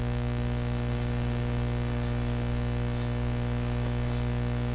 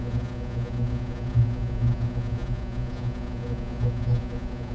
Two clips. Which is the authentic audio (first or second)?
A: first